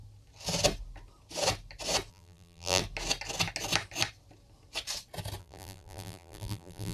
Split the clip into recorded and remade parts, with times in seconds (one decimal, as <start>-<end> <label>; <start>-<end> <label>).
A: 0.0-2.1 recorded; 2.1-2.8 remade; 2.8-5.4 recorded; 5.4-6.9 remade